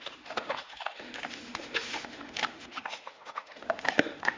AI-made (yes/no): yes